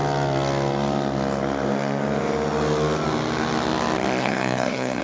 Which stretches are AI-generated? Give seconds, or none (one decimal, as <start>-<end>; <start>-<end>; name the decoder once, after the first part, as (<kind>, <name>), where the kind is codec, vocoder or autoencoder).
4.2-5.0 (codec, SNAC)